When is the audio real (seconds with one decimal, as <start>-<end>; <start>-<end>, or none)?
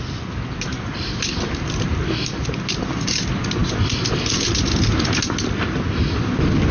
0.0-6.7